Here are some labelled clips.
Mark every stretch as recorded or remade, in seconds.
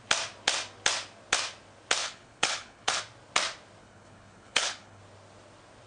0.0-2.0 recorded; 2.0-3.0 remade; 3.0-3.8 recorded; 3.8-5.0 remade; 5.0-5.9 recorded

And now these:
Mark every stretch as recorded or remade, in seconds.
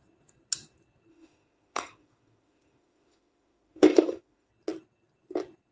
0.0-1.1 recorded; 1.1-4.5 remade; 4.5-5.7 recorded